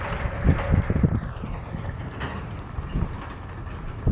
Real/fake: real